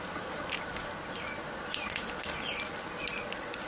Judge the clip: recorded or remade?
recorded